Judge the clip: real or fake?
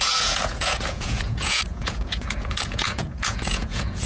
fake